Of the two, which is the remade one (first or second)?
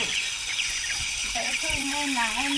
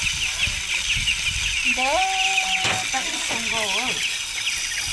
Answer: first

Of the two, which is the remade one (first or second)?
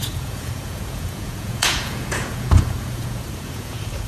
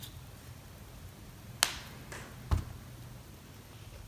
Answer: first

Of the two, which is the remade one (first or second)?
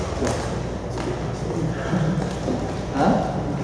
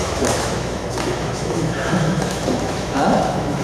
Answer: second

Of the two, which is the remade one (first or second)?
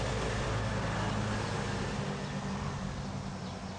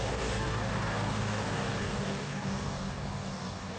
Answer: second